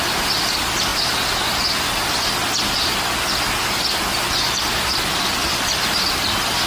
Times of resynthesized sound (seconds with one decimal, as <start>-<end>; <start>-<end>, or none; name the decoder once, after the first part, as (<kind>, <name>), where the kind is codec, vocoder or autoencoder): none